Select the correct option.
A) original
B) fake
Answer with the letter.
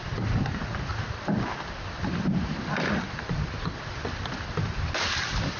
B